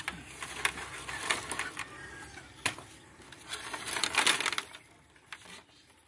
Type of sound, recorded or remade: recorded